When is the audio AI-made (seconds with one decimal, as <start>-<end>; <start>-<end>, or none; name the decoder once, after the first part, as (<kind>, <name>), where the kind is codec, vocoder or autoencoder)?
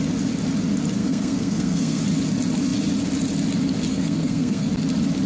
1.0-2.0 (codec, SNAC); 3.9-4.7